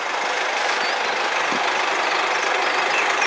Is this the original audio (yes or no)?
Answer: yes